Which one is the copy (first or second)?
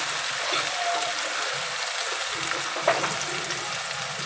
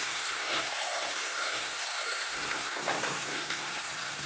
second